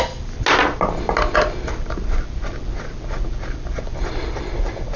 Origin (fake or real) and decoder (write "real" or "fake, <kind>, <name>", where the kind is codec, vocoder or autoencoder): real